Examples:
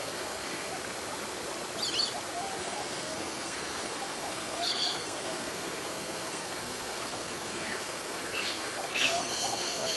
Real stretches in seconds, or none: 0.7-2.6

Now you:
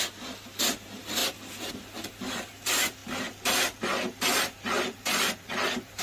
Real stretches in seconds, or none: 1.2-1.7; 3.0-3.8